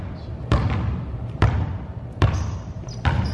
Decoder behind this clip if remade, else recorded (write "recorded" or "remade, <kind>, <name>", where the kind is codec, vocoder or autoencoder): recorded